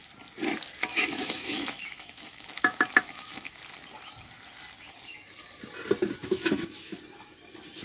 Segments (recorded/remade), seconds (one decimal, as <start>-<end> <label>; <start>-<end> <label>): 0.0-0.9 recorded; 0.9-3.6 remade; 3.6-6.2 recorded; 6.2-7.0 remade; 7.0-7.8 recorded